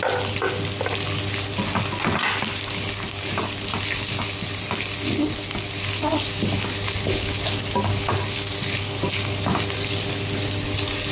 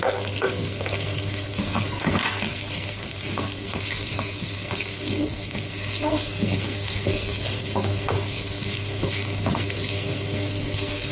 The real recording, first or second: first